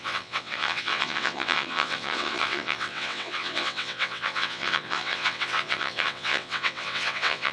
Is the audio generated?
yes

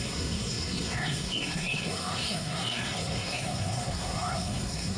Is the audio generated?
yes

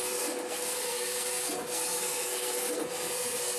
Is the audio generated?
yes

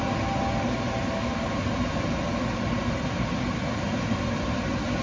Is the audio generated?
no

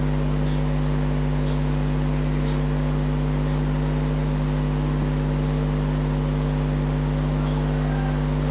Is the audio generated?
no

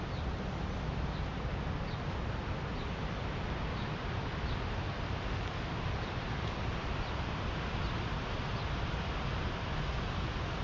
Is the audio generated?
no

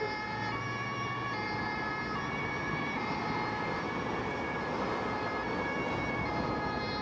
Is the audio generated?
no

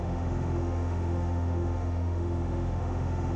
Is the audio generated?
yes